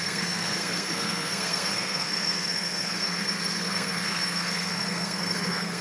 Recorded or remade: remade